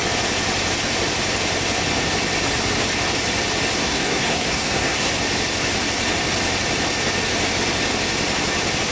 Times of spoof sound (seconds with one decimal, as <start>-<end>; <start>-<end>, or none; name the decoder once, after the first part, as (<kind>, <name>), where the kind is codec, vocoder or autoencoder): 3.8-5.1 (codec, SNAC)